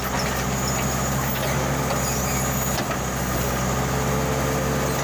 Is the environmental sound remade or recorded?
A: recorded